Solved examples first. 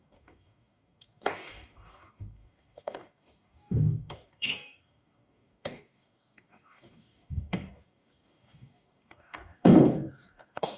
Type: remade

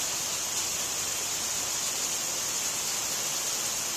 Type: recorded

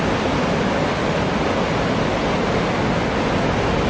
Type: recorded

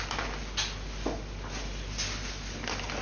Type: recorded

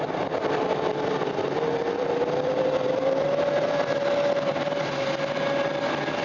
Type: remade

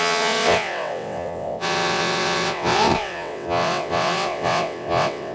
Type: remade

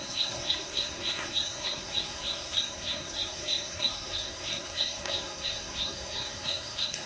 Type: remade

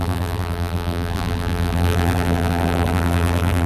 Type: remade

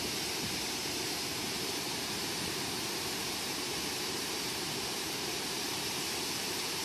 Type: remade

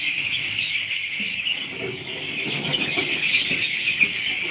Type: remade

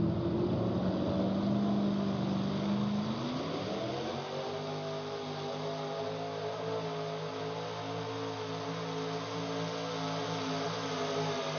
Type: recorded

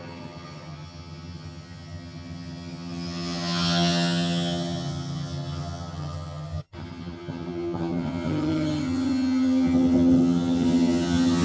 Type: remade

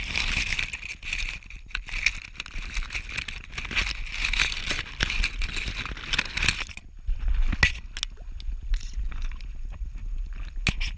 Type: recorded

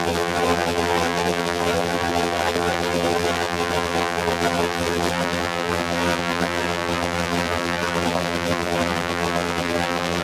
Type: remade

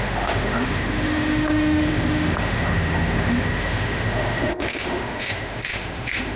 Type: remade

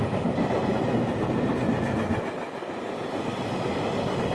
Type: recorded